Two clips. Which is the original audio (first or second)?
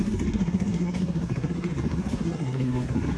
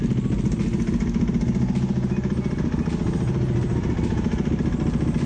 second